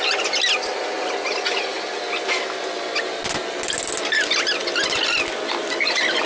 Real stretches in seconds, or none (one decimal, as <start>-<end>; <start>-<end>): 0.0-1.7; 2.4-4.6